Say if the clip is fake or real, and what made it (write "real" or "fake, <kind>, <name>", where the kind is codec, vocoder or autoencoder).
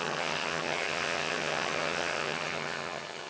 fake, vocoder, HiFi-GAN